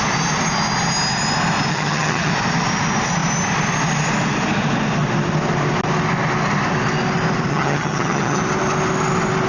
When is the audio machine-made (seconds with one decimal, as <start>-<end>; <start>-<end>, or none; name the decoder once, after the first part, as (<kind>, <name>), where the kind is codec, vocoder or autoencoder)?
1.7-2.3 (vocoder, HiFi-GAN); 7.5-8.4